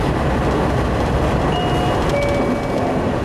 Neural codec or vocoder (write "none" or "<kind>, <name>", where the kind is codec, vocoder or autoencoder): none